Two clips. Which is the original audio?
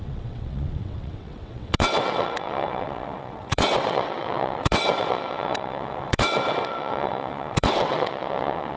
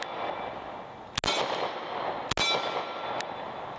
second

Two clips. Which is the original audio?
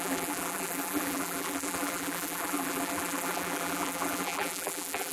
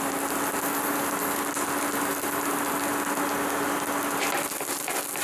second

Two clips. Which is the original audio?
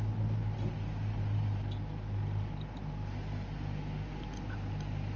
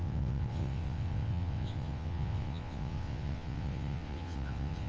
first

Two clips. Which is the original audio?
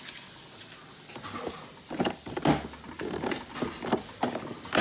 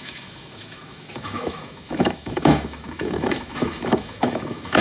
first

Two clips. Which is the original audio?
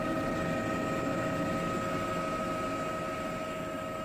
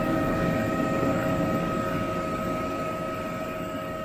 first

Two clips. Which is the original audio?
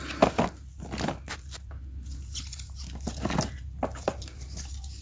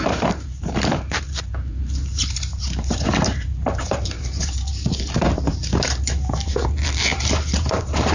first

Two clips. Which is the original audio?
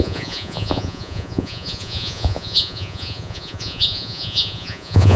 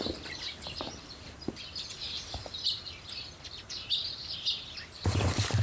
second